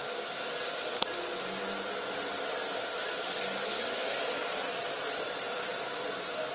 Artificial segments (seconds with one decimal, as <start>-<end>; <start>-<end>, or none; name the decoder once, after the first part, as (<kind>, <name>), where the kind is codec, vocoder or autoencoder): 4.4-5.4 (vocoder, Vocos)